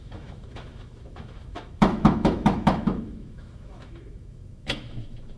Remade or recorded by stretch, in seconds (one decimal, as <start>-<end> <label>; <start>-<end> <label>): 0.0-5.4 remade